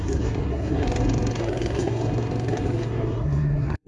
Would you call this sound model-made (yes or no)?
yes